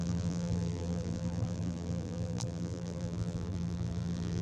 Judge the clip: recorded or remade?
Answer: remade